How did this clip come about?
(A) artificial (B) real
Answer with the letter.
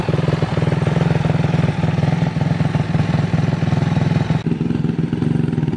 B